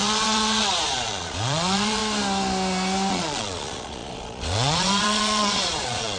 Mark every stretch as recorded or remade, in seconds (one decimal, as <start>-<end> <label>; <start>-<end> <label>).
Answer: 0.0-2.0 remade; 2.0-3.1 recorded; 3.1-6.2 remade